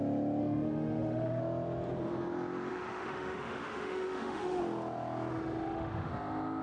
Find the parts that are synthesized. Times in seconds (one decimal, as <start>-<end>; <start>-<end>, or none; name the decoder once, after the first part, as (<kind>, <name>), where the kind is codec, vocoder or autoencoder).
0.4-1.4 (autoencoder, DAC-VAE); 2.7-4.6; 5.3-6.1